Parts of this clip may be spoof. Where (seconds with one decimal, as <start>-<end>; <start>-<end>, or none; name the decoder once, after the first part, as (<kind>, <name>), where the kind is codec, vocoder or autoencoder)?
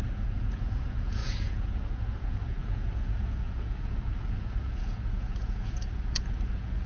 0.0-6.9 (vocoder, Vocos)